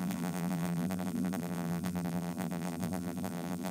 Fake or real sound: fake